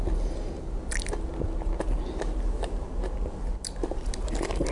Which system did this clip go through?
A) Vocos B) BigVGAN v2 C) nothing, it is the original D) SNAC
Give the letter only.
C